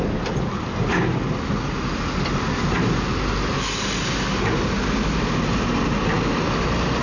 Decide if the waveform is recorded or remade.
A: recorded